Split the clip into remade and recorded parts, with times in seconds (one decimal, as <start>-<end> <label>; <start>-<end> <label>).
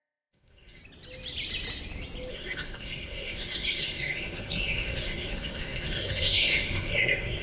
0.0-0.8 remade; 0.8-2.3 recorded; 2.3-7.4 remade